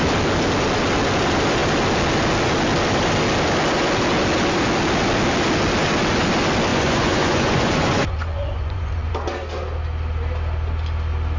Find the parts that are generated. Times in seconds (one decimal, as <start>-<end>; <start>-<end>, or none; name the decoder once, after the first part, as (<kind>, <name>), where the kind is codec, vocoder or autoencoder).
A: 6.7-9.1 (vocoder, Vocos)